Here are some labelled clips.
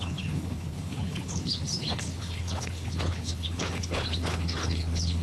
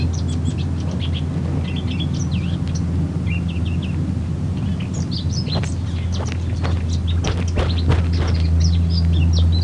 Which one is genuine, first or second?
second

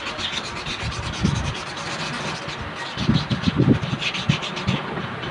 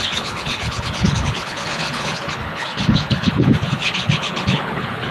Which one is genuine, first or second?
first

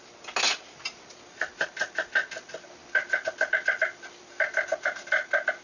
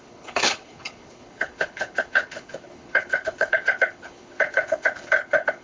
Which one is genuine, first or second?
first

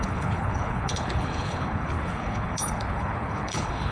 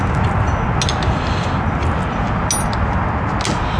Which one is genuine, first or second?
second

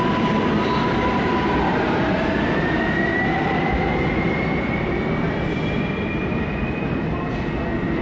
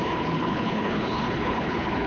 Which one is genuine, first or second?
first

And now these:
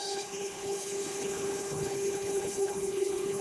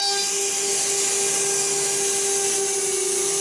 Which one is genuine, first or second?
second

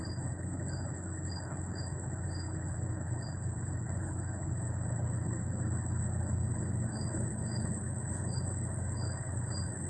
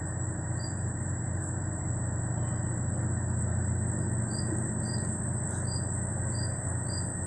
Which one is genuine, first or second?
second